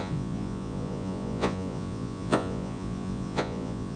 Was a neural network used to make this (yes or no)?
yes